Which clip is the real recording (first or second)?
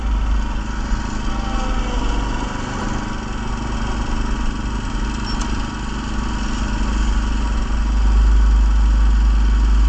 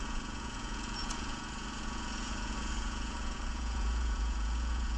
first